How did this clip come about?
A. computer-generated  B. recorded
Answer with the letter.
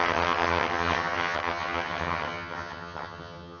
A